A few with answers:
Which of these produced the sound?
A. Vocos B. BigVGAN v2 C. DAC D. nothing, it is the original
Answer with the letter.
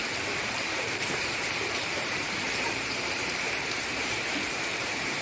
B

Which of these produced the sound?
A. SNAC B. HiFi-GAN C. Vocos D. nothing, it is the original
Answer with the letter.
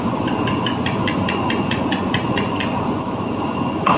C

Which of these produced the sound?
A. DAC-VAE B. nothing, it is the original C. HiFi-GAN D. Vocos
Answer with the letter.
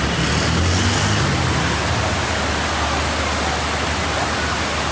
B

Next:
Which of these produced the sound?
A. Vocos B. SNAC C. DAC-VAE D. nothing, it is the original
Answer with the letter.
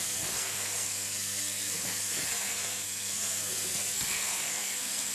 B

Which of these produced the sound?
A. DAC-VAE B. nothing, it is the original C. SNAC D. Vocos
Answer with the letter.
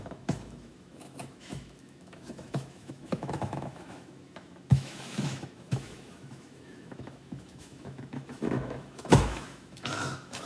A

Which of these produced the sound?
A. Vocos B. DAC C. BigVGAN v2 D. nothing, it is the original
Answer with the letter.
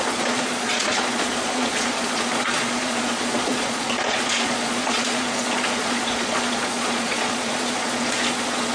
A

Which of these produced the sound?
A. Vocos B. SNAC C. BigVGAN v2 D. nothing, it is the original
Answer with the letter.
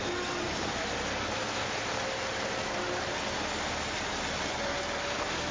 D